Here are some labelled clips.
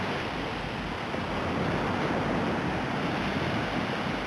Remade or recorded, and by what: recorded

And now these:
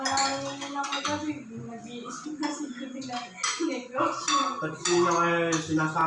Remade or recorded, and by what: recorded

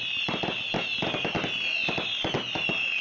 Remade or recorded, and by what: recorded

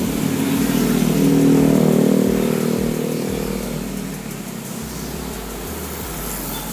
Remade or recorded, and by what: recorded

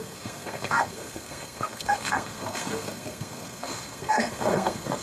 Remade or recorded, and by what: remade, codec, SNAC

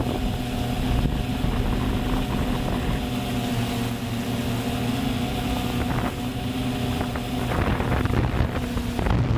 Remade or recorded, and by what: recorded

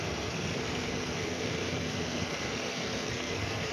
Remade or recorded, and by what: remade, codec, SNAC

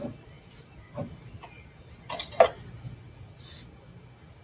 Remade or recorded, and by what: recorded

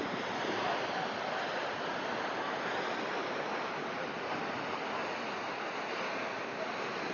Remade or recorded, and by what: recorded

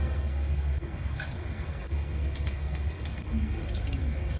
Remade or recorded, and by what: remade, codec, SNAC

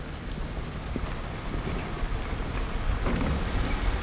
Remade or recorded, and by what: recorded